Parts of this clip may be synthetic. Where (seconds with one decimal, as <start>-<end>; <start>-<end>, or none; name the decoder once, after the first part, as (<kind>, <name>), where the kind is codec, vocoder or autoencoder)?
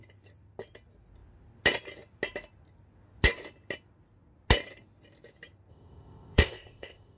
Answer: 5.7-7.2 (codec, ZipCodec)